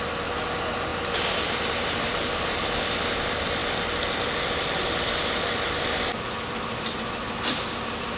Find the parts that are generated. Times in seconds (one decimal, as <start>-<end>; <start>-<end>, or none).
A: 0.9-2.7